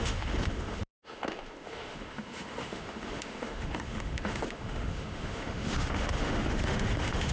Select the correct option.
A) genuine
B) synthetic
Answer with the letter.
B